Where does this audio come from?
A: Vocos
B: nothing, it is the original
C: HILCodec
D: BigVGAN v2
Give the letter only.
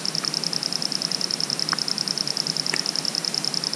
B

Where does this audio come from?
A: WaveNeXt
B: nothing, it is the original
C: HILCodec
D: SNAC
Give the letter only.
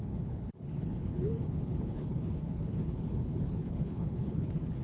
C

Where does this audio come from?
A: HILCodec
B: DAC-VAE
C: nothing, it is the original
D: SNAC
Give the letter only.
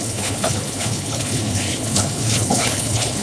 A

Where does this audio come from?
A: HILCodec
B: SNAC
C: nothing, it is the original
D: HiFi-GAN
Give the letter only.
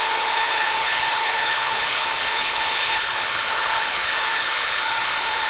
A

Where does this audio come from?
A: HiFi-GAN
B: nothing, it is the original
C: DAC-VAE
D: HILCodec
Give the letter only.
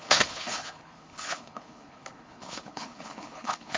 D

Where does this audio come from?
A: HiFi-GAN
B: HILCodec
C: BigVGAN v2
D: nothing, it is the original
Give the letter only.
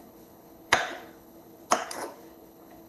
B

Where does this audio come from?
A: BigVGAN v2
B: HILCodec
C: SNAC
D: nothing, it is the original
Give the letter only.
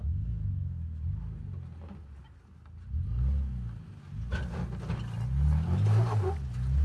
D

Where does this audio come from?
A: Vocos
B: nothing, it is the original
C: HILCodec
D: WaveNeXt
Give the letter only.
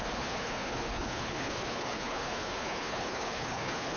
C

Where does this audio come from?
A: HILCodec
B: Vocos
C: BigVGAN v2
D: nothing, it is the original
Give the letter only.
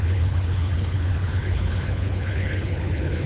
A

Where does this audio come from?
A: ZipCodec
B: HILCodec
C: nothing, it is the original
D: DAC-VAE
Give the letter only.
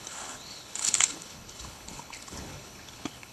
B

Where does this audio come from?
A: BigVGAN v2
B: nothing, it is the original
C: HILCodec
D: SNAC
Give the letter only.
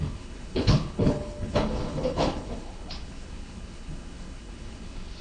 C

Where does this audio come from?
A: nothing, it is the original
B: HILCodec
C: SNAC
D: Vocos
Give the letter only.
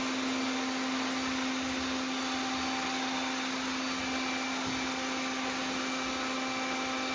A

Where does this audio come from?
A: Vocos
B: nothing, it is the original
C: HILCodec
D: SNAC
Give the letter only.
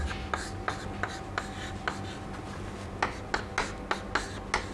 B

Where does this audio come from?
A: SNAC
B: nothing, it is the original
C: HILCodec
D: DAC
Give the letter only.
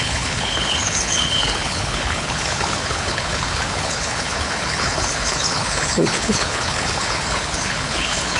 C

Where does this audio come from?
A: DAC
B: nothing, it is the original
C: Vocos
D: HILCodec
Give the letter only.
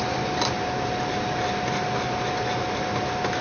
B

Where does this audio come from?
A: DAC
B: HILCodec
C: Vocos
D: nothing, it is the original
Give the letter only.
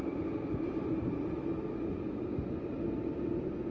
D